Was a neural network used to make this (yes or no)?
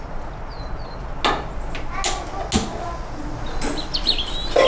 no